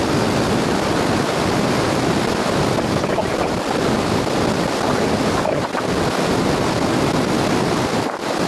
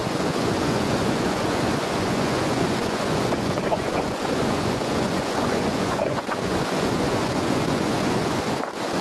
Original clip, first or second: first